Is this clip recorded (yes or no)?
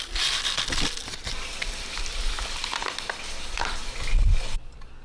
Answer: yes